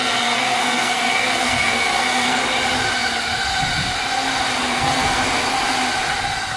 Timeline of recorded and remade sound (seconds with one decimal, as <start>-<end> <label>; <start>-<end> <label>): 0.0-2.4 remade; 2.4-4.7 recorded; 4.7-5.2 remade; 5.2-6.6 recorded